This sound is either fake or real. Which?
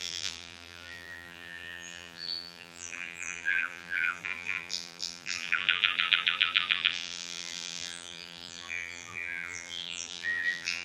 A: fake